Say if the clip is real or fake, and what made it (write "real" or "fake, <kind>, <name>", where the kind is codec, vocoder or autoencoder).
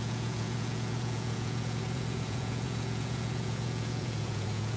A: fake, vocoder, Vocos